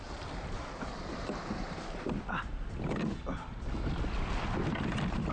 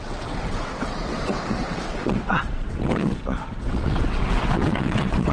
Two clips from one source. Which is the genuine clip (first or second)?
first